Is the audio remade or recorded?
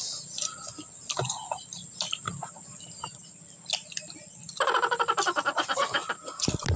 recorded